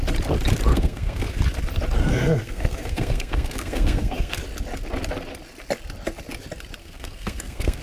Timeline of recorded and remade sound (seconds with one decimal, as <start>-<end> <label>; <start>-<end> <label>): 0.0-0.7 recorded; 0.7-1.4 remade; 1.4-2.0 recorded; 2.0-4.4 remade; 4.4-6.8 recorded; 6.8-7.8 remade